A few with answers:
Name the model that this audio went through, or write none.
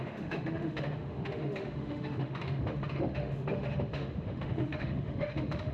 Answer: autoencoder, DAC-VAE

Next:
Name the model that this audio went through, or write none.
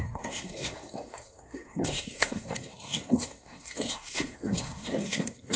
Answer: codec, SNAC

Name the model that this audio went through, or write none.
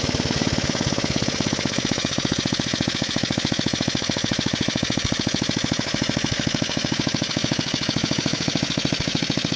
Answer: autoencoder, DAC-VAE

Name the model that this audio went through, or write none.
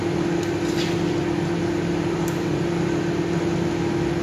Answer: none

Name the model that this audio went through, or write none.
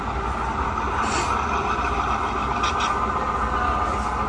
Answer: none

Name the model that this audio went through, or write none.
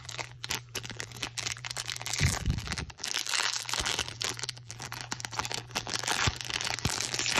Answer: vocoder, BigVGAN v2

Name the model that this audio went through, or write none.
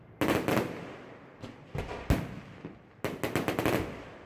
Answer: none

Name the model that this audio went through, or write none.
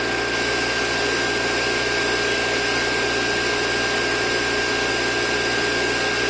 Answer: none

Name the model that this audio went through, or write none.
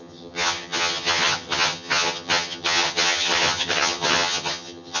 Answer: vocoder, HiFi-GAN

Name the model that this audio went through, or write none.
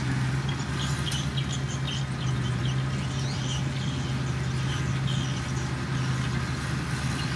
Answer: none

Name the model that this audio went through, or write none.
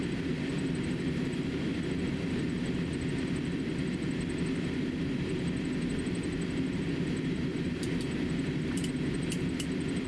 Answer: vocoder, BigVGAN v2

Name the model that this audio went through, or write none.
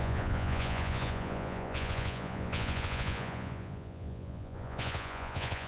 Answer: vocoder, Vocos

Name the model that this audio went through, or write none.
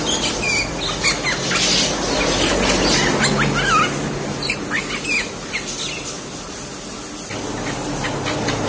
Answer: none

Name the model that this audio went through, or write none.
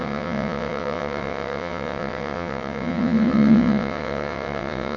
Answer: vocoder, WaveNeXt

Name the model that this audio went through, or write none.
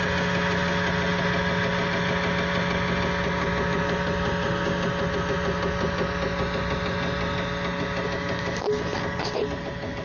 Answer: none